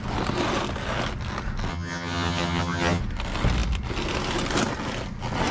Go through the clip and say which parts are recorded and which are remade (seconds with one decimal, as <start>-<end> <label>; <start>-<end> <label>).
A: 0.0-1.7 recorded; 1.7-3.0 remade; 3.0-5.5 recorded